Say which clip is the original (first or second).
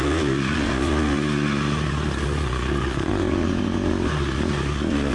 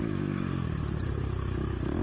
second